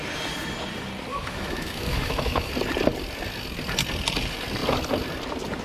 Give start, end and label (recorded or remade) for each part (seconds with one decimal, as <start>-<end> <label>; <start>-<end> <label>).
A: 0.0-1.1 recorded; 1.1-2.5 remade; 2.5-5.6 recorded